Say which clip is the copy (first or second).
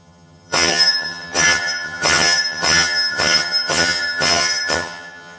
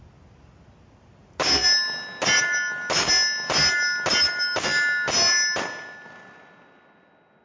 first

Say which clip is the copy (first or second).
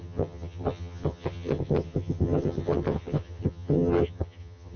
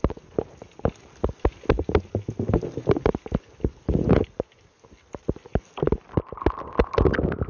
first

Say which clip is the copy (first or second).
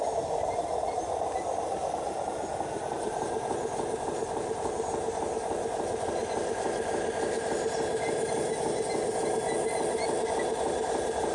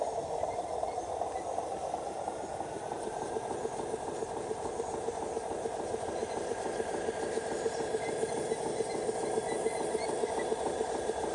second